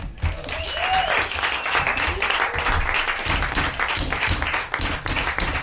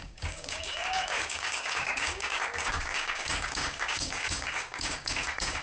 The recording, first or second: first